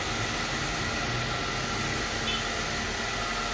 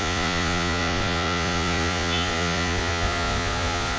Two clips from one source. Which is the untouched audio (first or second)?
first